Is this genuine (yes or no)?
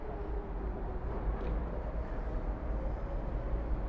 yes